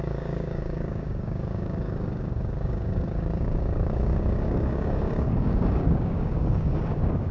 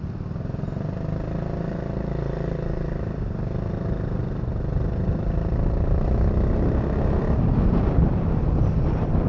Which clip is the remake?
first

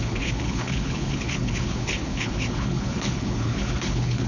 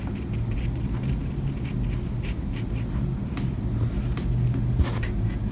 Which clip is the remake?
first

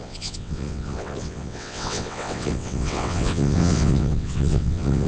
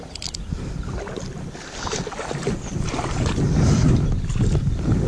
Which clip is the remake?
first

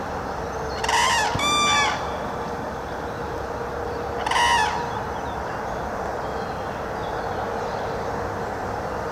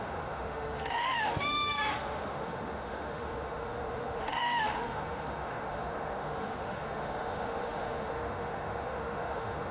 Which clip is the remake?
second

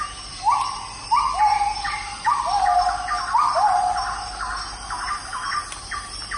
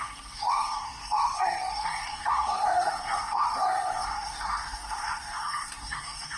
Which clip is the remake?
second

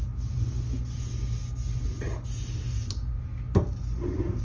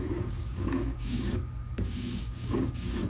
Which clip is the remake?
second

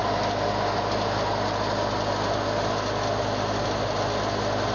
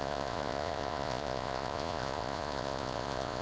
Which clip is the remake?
second